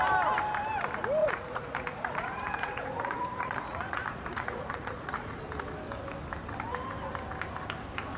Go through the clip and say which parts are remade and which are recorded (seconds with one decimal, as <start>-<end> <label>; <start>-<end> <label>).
0.0-1.2 recorded; 1.2-5.4 remade; 5.4-8.2 recorded